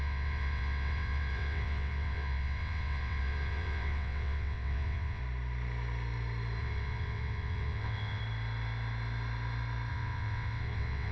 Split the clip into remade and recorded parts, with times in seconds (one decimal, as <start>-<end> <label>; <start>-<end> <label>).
0.0-5.2 remade; 5.2-6.6 recorded; 6.6-8.2 remade; 8.2-9.9 recorded; 9.9-11.1 remade